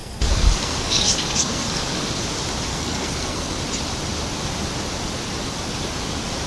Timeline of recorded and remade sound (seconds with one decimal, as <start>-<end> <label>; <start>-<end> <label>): 0.0-2.2 remade; 2.2-2.7 recorded; 2.7-3.6 remade; 3.6-6.5 recorded